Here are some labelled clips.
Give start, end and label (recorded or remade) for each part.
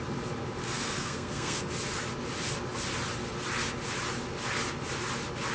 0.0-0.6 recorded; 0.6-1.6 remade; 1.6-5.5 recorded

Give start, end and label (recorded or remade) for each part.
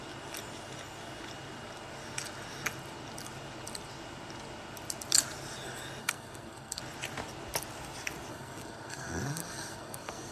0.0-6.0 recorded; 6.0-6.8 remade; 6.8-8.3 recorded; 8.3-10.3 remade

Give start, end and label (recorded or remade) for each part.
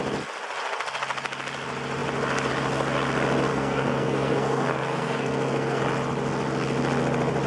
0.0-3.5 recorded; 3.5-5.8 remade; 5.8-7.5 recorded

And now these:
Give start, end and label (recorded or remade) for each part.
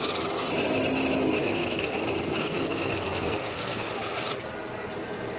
0.0-1.4 recorded; 1.4-2.0 remade; 2.0-2.4 recorded; 2.4-3.9 remade; 3.9-5.4 recorded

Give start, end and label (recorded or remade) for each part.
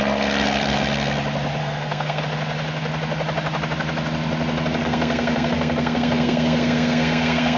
0.0-1.6 recorded; 1.6-2.2 remade; 2.2-4.8 recorded; 4.8-7.6 remade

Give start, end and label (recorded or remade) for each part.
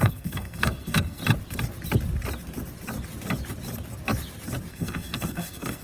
0.0-1.2 remade; 1.2-4.7 recorded; 4.7-5.8 remade